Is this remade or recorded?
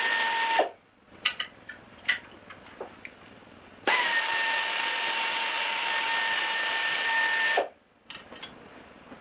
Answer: recorded